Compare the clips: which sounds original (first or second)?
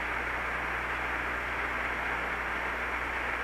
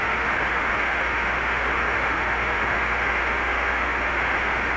first